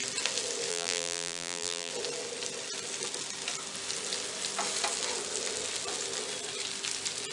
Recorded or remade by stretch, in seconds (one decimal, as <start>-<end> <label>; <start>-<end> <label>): 0.0-0.7 recorded; 0.7-1.9 remade; 1.9-7.3 recorded